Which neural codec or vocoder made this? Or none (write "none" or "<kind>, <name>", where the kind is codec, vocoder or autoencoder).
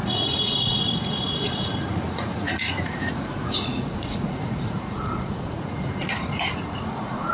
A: vocoder, Vocos